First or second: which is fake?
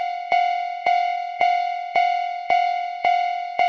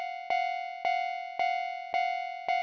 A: first